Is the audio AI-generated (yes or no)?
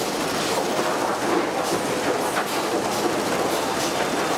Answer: no